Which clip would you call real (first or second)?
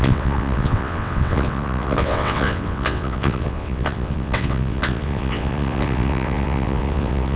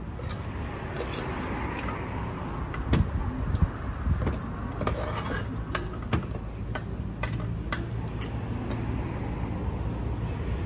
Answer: second